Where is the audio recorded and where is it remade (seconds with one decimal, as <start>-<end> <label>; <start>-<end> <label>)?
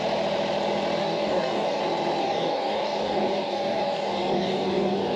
0.0-1.0 recorded; 1.0-1.8 remade; 1.8-2.2 recorded; 2.2-5.2 remade